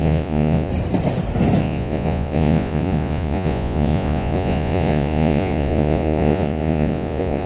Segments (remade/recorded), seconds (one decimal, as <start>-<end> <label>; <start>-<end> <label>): 0.0-0.7 remade; 0.7-1.6 recorded; 1.6-7.5 remade